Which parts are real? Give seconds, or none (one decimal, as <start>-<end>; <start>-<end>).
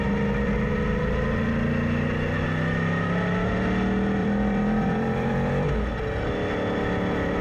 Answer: 0.0-4.2; 5.5-7.4